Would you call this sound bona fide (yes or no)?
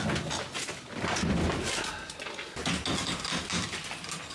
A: yes